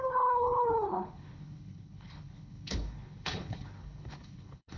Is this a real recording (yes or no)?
no